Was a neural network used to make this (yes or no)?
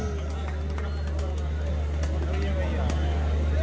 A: no